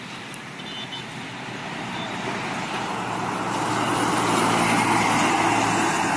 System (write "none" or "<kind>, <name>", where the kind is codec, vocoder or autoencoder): none